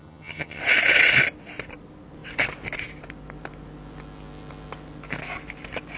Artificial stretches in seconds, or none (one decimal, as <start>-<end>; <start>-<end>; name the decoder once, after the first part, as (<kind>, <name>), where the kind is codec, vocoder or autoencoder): 0.0-0.6 (vocoder, HiFi-GAN)